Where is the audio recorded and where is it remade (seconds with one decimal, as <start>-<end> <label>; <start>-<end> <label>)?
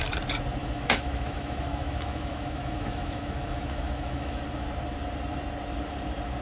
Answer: 0.0-0.6 recorded; 0.6-4.4 remade; 4.4-6.4 recorded